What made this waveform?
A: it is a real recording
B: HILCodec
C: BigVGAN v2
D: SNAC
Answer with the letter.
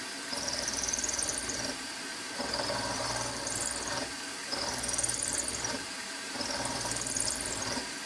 C